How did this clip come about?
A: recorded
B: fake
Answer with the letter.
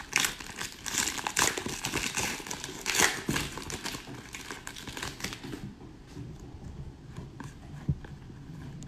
A